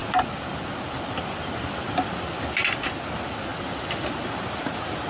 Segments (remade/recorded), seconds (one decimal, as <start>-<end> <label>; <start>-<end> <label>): 0.0-5.1 recorded